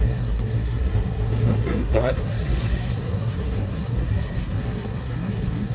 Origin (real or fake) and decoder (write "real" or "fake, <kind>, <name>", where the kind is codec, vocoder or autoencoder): fake, codec, SNAC